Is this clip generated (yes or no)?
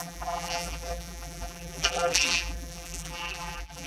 yes